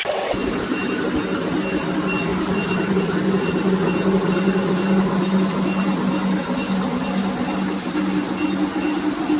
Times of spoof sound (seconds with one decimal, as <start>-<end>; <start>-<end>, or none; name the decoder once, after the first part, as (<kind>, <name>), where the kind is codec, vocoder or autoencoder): 0.4-1.2 (vocoder, BigVGAN v2); 2.3-3.0